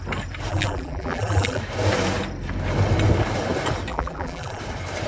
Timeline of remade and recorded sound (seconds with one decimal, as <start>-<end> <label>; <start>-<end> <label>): 0.0-0.5 recorded; 0.5-1.6 remade; 1.6-3.9 recorded; 3.9-4.6 remade; 4.6-5.1 recorded